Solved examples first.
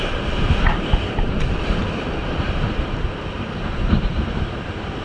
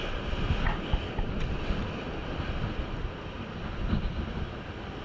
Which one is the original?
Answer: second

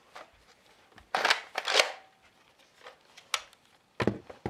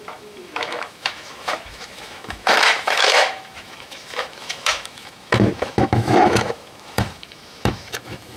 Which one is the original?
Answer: first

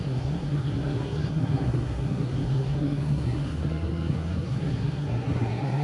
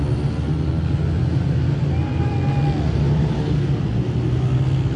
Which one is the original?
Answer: second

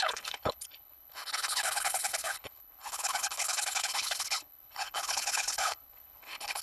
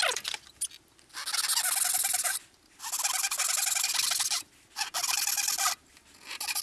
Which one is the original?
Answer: second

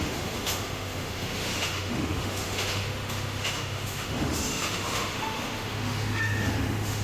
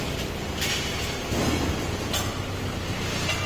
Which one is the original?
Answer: second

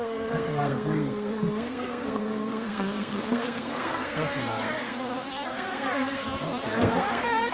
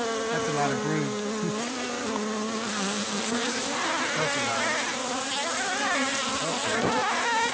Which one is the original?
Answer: second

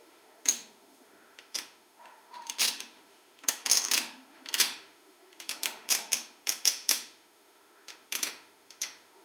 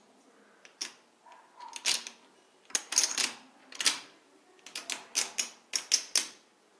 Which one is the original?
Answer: second